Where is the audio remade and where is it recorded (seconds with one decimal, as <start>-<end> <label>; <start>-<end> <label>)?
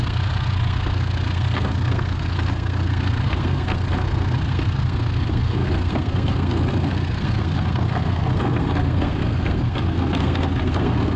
0.0-11.2 remade